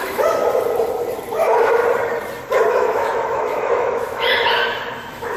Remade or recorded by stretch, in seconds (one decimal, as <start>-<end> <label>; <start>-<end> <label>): 0.0-0.4 remade; 0.4-1.3 recorded; 1.3-1.8 remade; 1.8-2.7 recorded; 2.7-5.4 remade